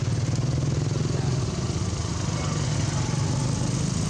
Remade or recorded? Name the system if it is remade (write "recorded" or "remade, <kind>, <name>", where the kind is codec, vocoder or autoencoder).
recorded